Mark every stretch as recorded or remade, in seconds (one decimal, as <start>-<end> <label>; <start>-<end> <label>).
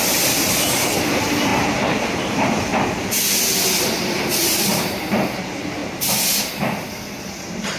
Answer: 0.0-1.5 remade; 1.5-2.0 recorded; 2.0-2.7 remade; 2.7-4.1 recorded; 4.1-5.8 remade; 5.8-6.9 recorded; 6.9-7.8 remade